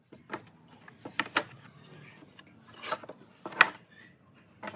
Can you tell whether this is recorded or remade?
recorded